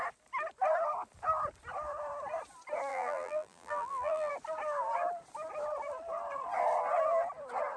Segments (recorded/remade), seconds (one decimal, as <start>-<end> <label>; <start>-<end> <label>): 0.0-2.9 recorded; 2.9-4.3 remade; 4.3-7.8 recorded